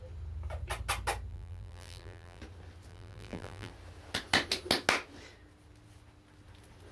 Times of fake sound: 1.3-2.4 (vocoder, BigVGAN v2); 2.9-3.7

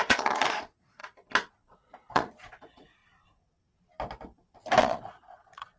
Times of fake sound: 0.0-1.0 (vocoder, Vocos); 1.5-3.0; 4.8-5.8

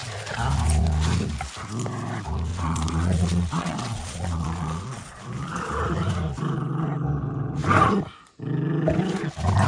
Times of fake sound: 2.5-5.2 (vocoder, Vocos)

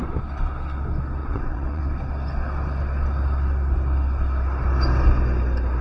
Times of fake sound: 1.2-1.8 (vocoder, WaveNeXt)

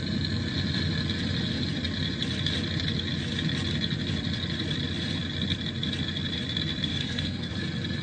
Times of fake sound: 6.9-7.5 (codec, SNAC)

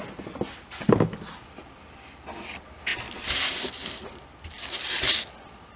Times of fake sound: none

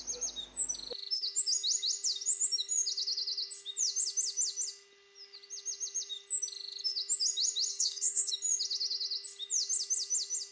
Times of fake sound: 7.7-8.3 (codec, SNAC)